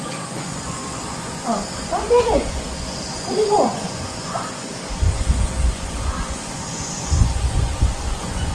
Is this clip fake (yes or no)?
yes